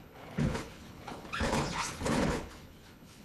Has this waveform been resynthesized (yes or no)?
yes